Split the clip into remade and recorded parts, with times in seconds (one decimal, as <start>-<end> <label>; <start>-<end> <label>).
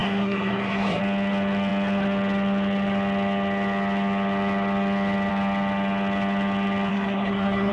0.0-1.0 remade; 1.0-6.9 recorded; 6.9-7.7 remade